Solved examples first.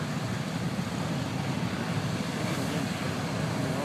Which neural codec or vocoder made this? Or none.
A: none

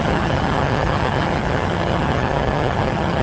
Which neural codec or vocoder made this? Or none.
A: vocoder, HiFi-GAN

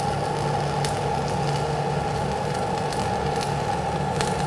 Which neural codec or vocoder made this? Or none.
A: none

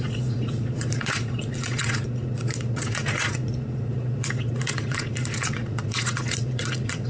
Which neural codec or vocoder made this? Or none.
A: vocoder, Vocos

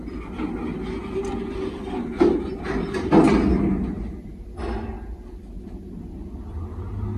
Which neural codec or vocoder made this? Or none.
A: none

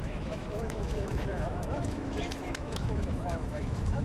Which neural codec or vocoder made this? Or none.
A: autoencoder, DAC-VAE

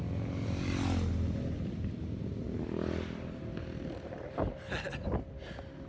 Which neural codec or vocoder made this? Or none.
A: none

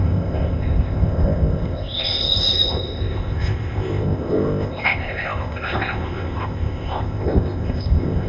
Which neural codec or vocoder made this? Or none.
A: codec, ZipCodec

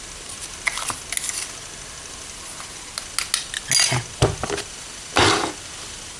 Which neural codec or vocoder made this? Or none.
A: none